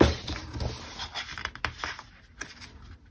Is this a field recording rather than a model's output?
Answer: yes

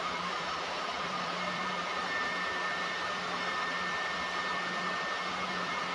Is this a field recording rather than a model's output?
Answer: no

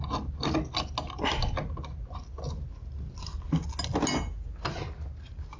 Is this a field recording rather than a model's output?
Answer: yes